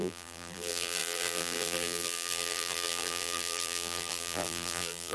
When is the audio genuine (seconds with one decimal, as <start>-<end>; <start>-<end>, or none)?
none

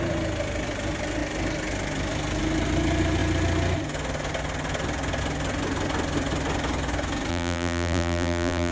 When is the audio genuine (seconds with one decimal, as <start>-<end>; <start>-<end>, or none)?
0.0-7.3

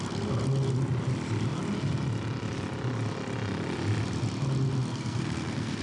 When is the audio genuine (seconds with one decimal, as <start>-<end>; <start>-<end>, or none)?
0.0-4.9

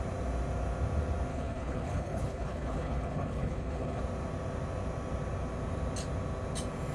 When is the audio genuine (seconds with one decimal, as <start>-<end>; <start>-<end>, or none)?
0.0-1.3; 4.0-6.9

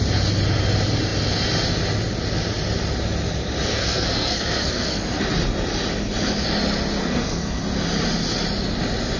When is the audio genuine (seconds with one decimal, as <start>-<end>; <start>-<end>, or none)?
0.0-3.7; 5.2-7.0; 7.6-9.2